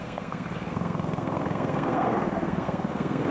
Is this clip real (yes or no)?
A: no